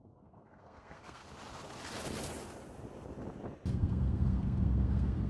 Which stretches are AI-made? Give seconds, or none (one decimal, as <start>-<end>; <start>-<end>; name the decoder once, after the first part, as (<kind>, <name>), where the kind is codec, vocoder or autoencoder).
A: 0.0-1.2 (codec, SNAC); 3.7-5.3